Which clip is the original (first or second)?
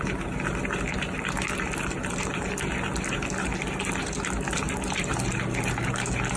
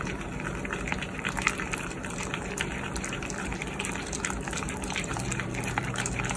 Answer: first